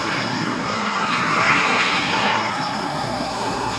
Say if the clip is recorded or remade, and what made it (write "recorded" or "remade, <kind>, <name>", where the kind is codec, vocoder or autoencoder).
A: remade, codec, SNAC